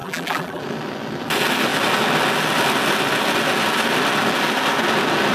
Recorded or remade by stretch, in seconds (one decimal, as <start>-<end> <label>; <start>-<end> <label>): 0.0-0.6 remade; 0.6-5.3 recorded